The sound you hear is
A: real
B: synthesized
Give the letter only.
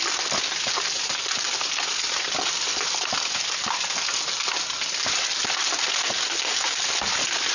A